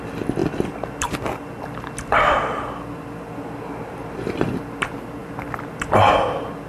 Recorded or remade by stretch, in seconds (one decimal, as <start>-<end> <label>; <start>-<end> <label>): 0.0-6.7 recorded